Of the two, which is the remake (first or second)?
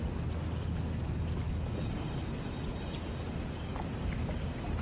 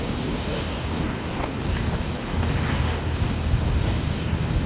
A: second